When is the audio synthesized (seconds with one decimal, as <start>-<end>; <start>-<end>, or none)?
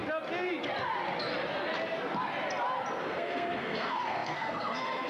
3.0-5.1